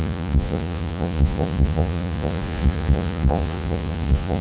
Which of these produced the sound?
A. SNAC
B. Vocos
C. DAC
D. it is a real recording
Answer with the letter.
B